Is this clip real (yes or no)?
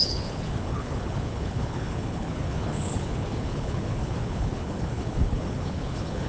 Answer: no